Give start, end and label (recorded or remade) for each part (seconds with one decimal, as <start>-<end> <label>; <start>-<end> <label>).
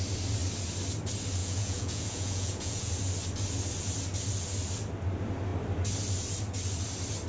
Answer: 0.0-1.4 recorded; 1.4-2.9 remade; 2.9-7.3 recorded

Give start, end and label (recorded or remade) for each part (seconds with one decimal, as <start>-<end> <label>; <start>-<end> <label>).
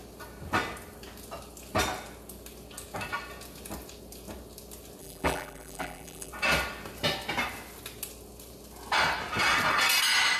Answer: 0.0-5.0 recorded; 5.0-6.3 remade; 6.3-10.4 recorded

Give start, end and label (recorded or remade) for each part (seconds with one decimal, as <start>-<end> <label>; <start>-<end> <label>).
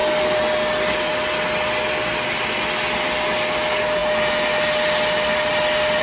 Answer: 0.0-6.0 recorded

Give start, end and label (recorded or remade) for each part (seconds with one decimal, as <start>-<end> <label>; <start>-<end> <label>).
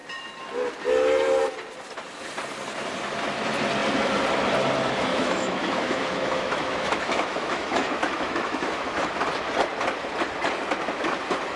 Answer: 0.0-5.1 recorded; 5.1-9.1 remade; 9.1-11.6 recorded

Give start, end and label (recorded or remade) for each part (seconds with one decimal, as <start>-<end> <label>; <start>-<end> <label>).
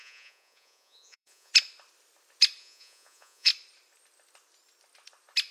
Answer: 0.0-1.5 remade; 1.5-2.6 recorded; 2.6-3.5 remade; 3.5-5.5 recorded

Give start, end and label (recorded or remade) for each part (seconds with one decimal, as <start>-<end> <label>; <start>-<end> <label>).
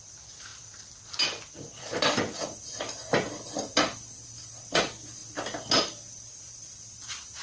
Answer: 0.0-7.4 recorded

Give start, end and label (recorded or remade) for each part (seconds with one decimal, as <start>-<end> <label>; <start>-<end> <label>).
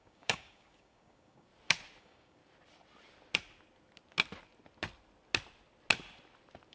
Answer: 0.0-1.5 remade; 1.5-2.0 recorded; 2.0-2.4 remade; 2.4-6.7 recorded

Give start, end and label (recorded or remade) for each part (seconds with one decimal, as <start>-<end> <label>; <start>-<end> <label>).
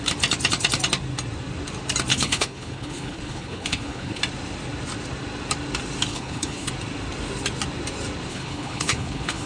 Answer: 0.0-2.1 recorded; 2.1-4.2 remade; 4.2-6.1 recorded; 6.1-6.7 remade; 6.7-8.3 recorded; 8.3-9.5 remade